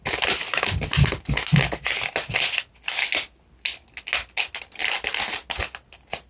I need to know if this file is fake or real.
real